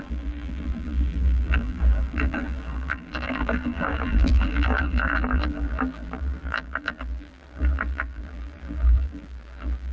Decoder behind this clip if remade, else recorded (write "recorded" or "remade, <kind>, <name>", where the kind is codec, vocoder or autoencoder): remade, vocoder, BigVGAN v2